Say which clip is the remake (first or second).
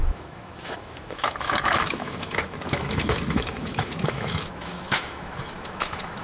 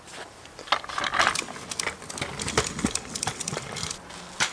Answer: first